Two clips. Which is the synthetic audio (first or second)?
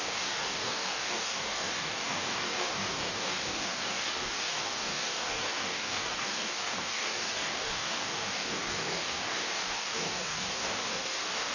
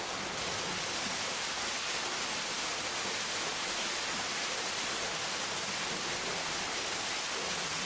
first